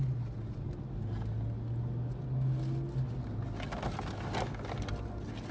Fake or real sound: real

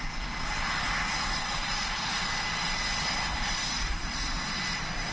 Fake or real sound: real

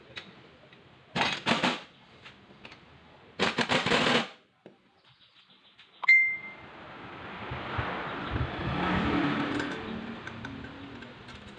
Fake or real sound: real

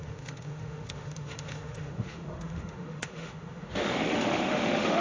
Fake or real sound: fake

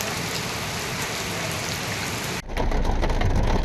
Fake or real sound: real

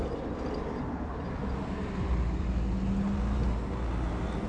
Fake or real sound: real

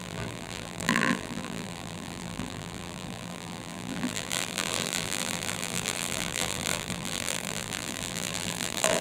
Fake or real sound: fake